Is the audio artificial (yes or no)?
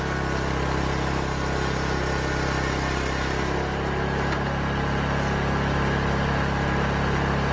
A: no